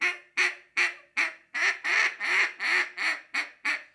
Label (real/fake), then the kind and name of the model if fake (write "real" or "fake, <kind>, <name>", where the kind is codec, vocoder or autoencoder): real